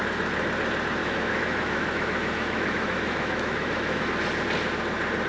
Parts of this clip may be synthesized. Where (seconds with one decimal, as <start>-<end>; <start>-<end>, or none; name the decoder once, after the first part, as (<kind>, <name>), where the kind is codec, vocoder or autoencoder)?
1.0-4.1 (autoencoder, DAC-VAE)